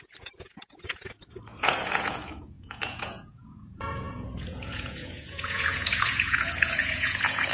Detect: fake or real fake